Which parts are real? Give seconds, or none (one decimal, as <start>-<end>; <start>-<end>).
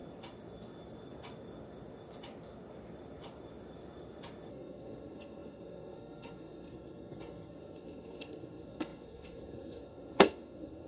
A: 0.0-4.5